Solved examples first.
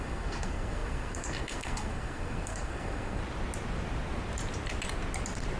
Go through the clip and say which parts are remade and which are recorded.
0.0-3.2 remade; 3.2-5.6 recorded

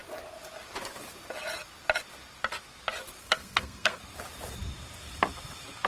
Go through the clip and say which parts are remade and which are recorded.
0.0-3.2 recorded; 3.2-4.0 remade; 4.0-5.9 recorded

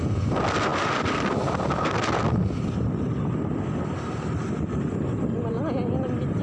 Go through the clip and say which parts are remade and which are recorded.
0.0-6.4 recorded

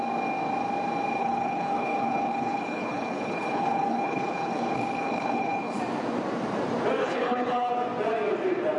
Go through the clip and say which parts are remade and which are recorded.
0.0-1.2 recorded; 1.2-5.8 remade; 5.8-7.0 recorded; 7.0-7.7 remade; 7.7-8.8 recorded

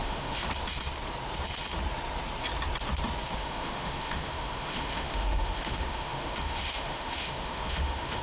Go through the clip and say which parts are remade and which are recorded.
0.0-0.5 remade; 0.5-3.4 recorded; 3.4-8.2 remade